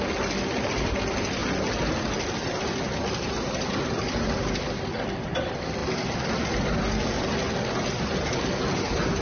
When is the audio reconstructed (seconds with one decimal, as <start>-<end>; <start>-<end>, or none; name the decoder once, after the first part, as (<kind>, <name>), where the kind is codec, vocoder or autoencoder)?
none